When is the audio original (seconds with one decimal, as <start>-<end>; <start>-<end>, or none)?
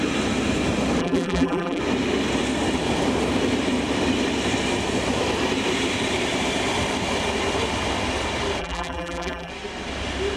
0.0-1.0; 1.8-8.6; 9.5-10.4